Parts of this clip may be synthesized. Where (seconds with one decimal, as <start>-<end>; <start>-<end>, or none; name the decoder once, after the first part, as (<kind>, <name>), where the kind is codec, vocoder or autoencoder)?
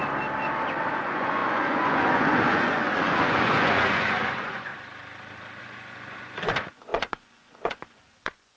0.9-4.7 (vocoder, Vocos); 5.6-8.6